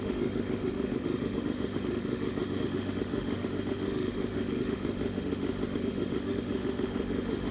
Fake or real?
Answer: fake